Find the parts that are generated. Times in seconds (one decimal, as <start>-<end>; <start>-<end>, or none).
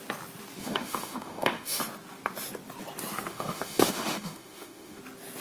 0.6-1.8; 3.3-5.0